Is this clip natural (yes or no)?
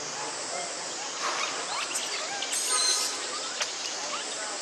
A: yes